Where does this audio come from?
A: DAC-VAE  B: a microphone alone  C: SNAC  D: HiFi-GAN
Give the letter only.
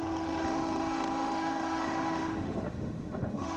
A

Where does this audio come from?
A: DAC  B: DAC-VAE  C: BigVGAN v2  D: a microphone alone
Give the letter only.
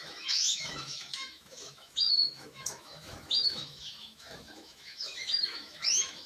B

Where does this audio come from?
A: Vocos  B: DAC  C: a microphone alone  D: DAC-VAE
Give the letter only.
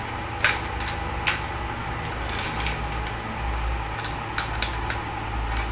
C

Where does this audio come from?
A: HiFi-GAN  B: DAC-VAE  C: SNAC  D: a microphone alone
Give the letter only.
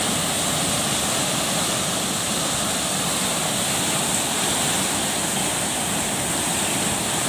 D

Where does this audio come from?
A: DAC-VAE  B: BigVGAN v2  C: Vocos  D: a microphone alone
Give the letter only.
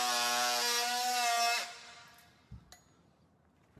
D